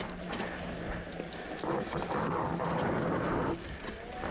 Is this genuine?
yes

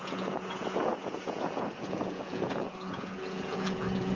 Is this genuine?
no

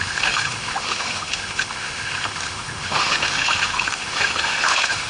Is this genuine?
no